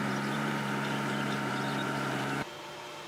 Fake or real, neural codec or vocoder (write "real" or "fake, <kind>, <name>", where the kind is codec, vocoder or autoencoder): fake, vocoder, BigVGAN v2